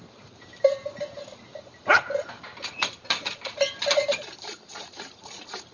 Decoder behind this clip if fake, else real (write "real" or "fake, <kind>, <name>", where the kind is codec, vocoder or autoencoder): fake, vocoder, BigVGAN v2